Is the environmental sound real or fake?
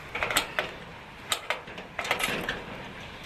real